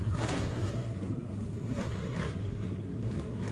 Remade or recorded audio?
remade